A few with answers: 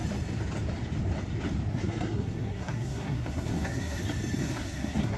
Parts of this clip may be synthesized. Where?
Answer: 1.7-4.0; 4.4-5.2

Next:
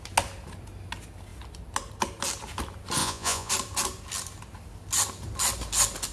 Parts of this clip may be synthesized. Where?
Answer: 3.0-3.5

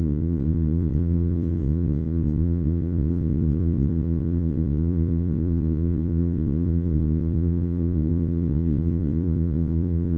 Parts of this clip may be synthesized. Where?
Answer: 0.0-10.2

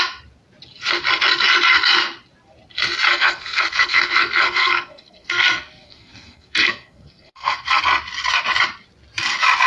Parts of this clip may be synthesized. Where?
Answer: 3.1-7.8

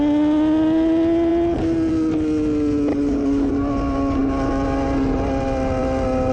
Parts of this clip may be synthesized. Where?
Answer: 2.9-3.5